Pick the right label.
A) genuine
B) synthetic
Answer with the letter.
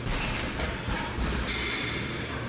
A